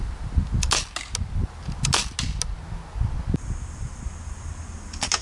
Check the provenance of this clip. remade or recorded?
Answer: recorded